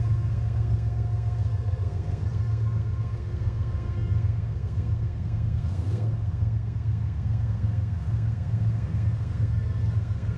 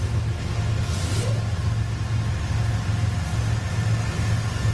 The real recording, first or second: second